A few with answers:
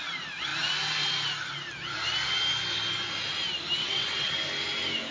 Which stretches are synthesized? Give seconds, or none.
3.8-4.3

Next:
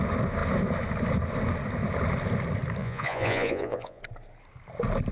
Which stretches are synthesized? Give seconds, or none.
2.8-4.0